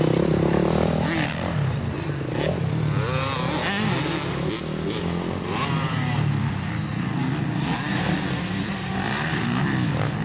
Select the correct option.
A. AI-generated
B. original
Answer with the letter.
B